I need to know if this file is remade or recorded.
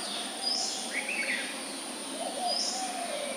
remade